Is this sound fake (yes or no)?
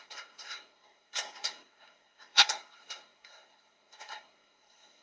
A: yes